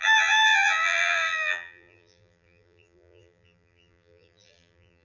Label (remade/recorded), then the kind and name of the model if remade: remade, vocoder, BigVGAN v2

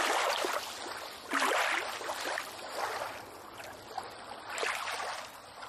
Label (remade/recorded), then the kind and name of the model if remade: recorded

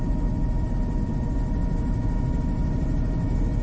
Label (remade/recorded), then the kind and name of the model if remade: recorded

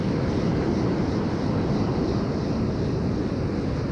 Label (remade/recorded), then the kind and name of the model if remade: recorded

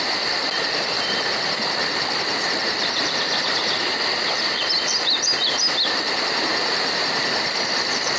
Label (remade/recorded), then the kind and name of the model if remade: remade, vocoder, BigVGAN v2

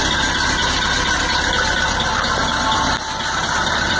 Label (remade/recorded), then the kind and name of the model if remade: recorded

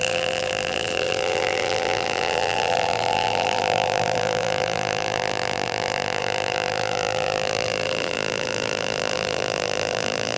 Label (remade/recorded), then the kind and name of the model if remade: remade, vocoder, BigVGAN v2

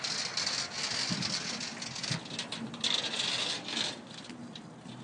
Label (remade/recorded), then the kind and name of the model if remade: recorded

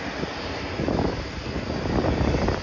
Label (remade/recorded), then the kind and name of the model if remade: recorded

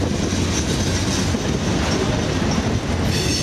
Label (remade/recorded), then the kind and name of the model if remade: recorded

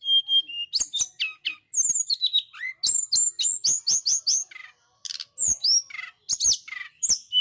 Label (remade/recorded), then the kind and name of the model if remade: recorded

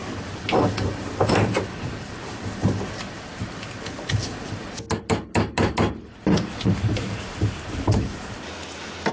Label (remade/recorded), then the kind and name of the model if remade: recorded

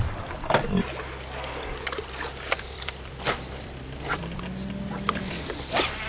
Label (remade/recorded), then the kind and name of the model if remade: remade, vocoder, BigVGAN v2